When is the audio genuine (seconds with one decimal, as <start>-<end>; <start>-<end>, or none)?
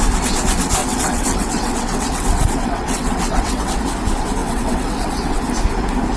0.0-0.8; 3.8-4.4; 5.4-6.2